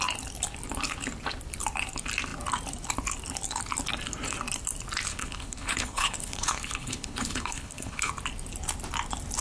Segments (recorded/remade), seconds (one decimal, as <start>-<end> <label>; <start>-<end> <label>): 0.0-5.1 recorded; 5.1-8.1 remade; 8.1-9.4 recorded